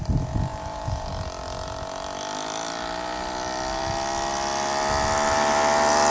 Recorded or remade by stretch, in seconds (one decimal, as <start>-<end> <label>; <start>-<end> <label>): 0.0-0.5 recorded; 0.5-1.1 remade; 1.1-6.1 recorded